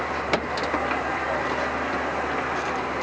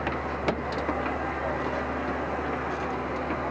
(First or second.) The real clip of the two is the second